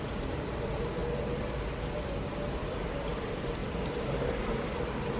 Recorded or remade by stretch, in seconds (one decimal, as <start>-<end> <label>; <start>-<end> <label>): 0.0-1.0 remade; 1.0-2.3 recorded; 2.3-3.6 remade; 3.6-4.4 recorded; 4.4-5.2 remade

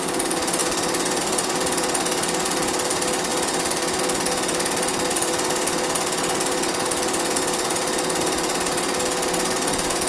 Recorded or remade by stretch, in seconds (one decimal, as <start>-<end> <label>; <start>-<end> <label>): 0.0-10.1 recorded

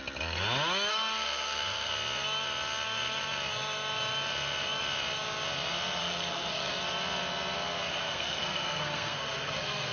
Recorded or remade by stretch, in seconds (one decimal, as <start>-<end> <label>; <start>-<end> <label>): 0.0-0.9 recorded; 0.9-1.9 remade; 1.9-6.0 recorded; 6.0-6.7 remade; 6.7-7.9 recorded; 7.9-9.9 remade

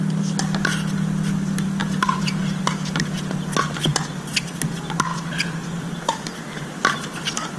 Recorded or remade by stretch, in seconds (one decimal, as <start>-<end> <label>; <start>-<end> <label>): 0.0-1.8 recorded; 1.8-2.6 remade; 2.6-5.1 recorded; 5.1-6.3 remade; 6.3-7.6 recorded

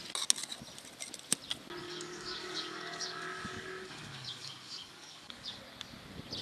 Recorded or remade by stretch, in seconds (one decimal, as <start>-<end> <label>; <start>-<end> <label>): 0.0-1.8 recorded; 1.8-5.6 remade; 5.6-6.4 recorded